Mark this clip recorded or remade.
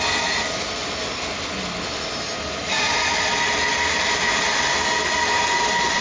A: recorded